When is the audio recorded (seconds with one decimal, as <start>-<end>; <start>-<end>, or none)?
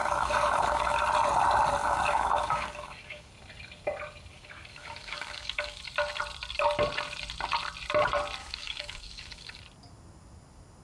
1.0-1.8; 3.3-4.3; 5.8-8.4; 9.6-10.8